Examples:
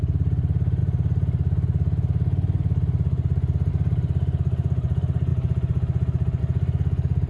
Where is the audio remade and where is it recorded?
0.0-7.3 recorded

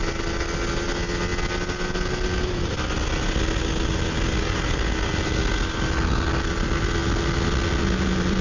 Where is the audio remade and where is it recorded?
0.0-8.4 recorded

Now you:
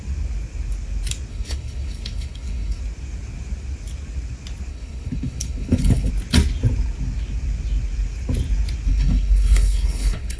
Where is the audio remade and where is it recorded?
0.0-1.3 recorded; 1.3-2.8 remade; 2.8-4.7 recorded; 4.7-6.1 remade; 6.1-8.9 recorded; 8.9-10.4 remade